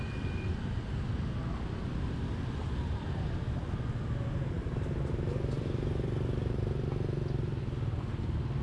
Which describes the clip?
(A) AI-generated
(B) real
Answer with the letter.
B